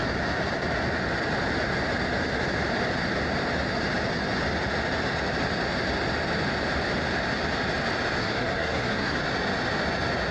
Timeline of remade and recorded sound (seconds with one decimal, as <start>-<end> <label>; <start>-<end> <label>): 0.0-8.2 recorded; 8.2-9.2 remade; 9.2-10.3 recorded